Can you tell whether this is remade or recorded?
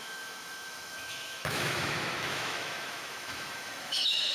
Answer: remade